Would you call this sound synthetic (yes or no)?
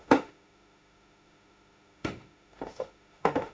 yes